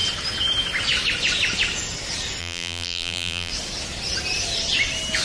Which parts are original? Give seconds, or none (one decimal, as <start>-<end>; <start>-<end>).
0.0-2.4; 3.5-5.2